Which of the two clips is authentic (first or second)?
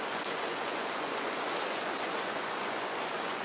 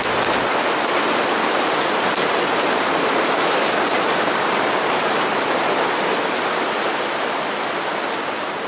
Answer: second